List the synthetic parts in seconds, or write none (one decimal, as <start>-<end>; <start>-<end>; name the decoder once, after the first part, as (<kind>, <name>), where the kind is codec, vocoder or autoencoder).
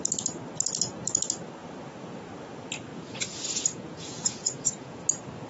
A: 2.9-5.0 (vocoder, Vocos)